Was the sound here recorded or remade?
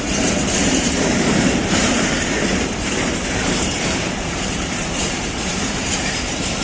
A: remade